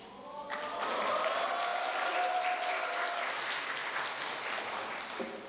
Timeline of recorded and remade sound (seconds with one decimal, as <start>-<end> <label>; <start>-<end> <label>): 0.0-5.5 recorded